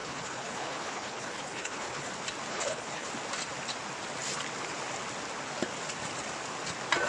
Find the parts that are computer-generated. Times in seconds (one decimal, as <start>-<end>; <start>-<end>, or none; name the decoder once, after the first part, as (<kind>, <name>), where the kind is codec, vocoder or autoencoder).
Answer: 0.0-2.1 (codec, HILCodec); 2.5-3.1